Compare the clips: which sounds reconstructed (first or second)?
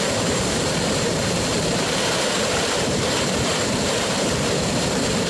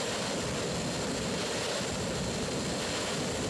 first